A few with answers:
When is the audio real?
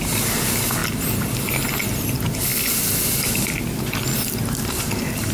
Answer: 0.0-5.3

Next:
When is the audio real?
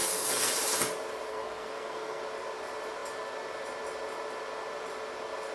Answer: 0.5-1.3; 2.2-5.5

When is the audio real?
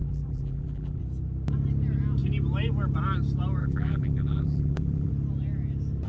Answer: 1.0-3.6; 5.1-6.1